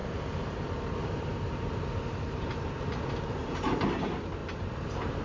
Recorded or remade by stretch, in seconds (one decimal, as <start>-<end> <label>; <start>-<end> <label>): 0.0-3.1 remade; 3.1-4.4 recorded; 4.4-5.2 remade